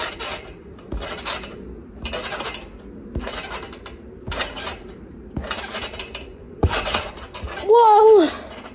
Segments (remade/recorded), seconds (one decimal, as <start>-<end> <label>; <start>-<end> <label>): 0.0-6.3 recorded; 6.3-7.1 remade; 7.1-8.7 recorded